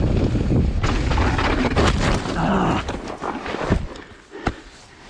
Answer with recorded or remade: recorded